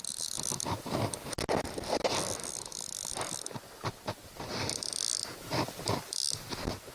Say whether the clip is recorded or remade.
recorded